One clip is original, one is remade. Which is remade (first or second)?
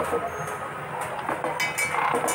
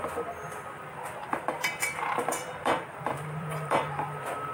second